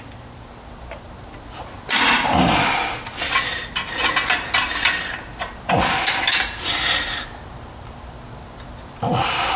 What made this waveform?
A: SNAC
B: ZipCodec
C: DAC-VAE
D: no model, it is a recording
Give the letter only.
D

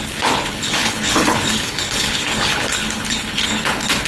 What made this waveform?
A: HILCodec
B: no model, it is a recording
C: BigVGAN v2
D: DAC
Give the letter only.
A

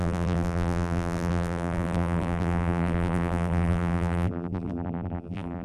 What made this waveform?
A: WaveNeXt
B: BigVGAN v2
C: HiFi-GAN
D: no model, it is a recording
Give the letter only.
B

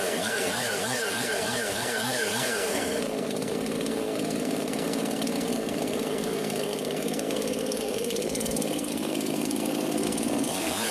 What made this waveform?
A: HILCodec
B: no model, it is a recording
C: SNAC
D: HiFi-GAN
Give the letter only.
C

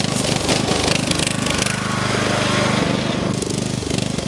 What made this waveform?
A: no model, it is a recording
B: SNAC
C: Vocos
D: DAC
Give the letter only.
A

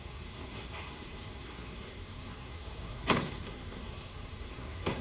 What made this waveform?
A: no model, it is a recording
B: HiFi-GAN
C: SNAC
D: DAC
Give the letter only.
C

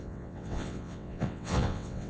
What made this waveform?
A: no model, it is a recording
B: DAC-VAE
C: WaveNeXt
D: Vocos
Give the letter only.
C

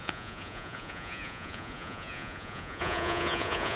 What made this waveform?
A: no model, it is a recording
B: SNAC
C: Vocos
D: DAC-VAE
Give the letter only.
C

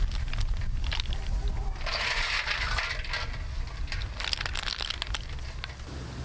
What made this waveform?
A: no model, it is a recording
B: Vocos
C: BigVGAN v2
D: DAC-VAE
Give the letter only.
A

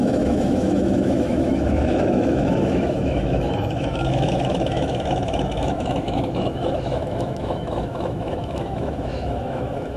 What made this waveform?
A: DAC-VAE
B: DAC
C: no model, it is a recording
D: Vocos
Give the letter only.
A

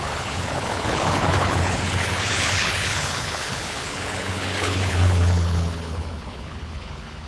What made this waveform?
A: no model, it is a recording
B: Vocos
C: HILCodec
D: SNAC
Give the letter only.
C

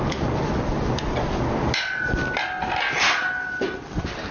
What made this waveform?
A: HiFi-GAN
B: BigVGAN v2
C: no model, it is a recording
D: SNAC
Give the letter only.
C